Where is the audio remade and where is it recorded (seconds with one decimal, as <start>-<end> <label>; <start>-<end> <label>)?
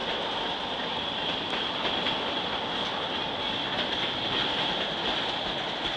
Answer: 0.0-6.0 recorded